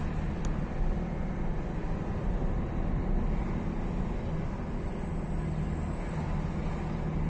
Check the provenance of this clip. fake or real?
real